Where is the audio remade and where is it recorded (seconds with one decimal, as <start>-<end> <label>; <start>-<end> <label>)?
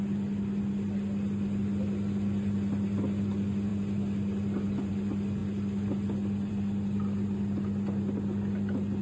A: 0.0-9.0 recorded